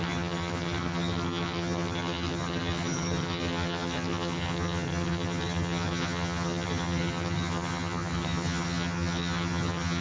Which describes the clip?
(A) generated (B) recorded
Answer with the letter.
A